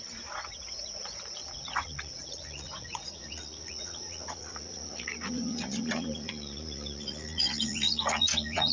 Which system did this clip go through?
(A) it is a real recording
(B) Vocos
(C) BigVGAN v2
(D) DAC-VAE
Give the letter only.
B